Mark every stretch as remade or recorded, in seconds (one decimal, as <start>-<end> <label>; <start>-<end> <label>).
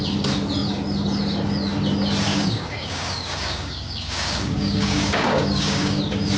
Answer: 0.0-2.3 recorded; 2.3-6.0 remade; 6.0-6.4 recorded